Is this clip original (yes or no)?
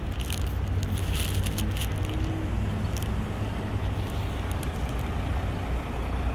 yes